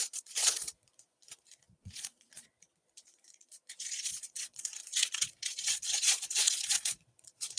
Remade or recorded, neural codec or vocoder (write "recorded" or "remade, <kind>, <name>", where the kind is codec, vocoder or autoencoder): remade, vocoder, Vocos